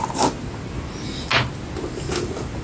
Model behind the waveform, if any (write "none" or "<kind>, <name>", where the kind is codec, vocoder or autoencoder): none